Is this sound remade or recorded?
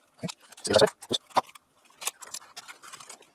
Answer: recorded